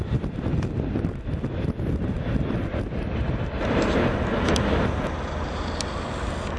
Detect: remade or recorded recorded